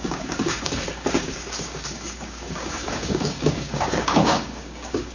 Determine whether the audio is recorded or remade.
remade